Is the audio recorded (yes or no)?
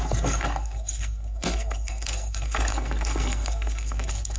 no